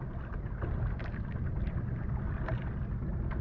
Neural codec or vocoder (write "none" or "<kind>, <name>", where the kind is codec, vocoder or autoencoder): none